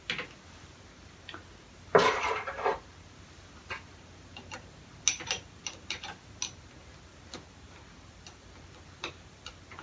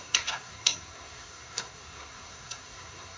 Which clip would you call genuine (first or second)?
first